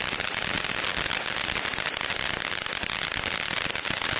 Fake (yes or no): no